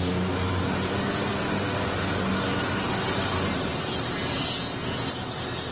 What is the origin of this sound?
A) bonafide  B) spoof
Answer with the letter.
A